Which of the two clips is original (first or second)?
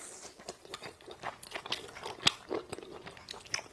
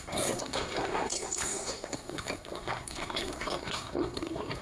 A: first